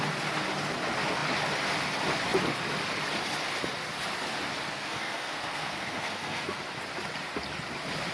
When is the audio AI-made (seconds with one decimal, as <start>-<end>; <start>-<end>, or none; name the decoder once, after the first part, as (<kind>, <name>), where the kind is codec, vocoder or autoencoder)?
4.7-6.6 (codec, SNAC)